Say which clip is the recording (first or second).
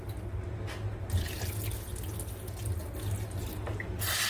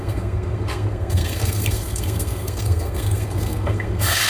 first